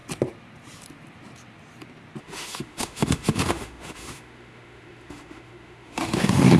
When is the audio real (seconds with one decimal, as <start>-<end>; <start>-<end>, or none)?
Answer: 0.0-2.2